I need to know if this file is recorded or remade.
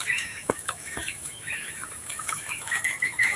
remade